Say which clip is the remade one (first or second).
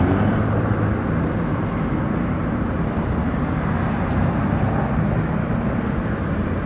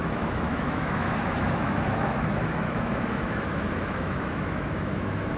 second